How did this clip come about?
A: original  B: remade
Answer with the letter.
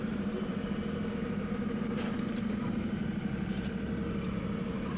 B